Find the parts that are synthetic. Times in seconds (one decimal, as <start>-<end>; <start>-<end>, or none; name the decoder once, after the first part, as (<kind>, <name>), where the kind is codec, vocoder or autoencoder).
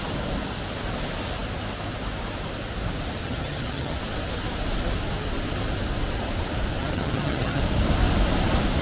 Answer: 3.2-4.0 (vocoder, HiFi-GAN); 6.8-7.6